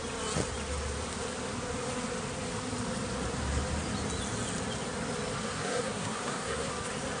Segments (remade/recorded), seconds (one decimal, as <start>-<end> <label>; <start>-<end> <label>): 0.0-5.4 recorded; 5.4-6.7 remade; 6.7-7.2 recorded